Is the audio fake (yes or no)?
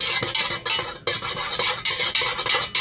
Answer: no